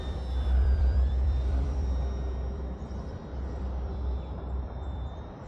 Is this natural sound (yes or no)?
no